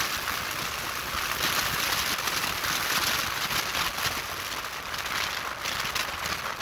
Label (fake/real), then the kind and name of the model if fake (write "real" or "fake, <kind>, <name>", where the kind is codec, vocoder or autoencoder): real